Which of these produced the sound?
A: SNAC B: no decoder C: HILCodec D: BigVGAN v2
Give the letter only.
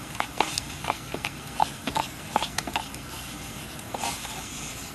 A